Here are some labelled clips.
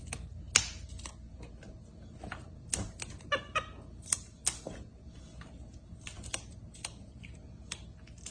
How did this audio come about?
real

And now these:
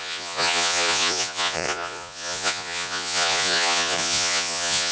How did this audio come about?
fake